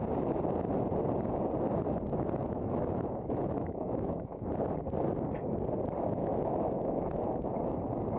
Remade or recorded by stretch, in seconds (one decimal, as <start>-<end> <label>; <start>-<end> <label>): 0.0-2.4 recorded; 2.4-4.5 remade; 4.5-6.2 recorded; 6.2-7.2 remade; 7.2-8.2 recorded